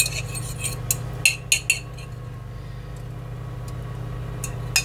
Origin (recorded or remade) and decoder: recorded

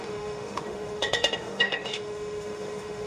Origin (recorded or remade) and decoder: remade, autoencoder, DAC-VAE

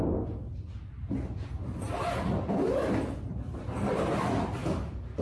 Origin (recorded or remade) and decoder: recorded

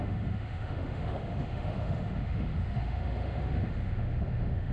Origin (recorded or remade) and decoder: remade, autoencoder, DAC-VAE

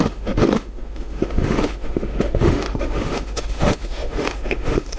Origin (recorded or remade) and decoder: remade, autoencoder, DAC-VAE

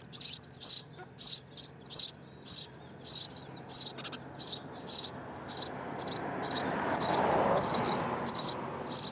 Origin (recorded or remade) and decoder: recorded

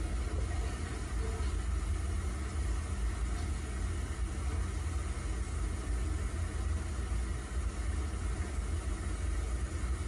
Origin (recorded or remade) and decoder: recorded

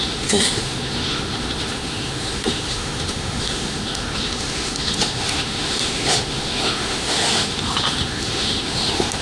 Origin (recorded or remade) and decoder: remade, autoencoder, DAC-VAE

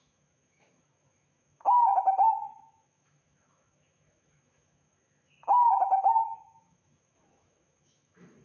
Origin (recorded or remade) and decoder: remade, autoencoder, DAC-VAE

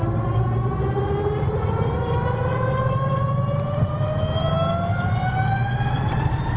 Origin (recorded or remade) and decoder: recorded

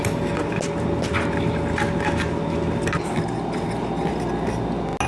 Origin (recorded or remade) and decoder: recorded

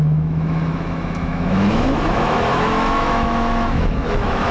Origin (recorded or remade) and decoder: remade, autoencoder, DAC-VAE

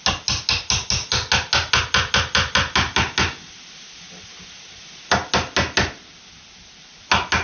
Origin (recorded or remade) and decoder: recorded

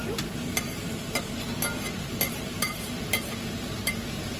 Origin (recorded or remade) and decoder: recorded